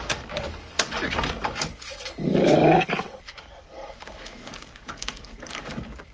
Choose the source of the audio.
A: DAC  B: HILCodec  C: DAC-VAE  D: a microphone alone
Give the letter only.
A